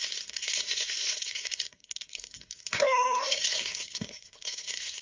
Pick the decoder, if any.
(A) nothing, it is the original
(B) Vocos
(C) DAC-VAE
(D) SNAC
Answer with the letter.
D